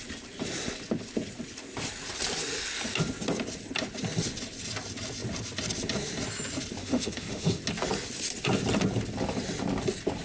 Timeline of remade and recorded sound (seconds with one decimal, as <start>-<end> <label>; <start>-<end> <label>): 0.0-6.8 recorded; 6.8-7.6 remade; 7.6-10.2 recorded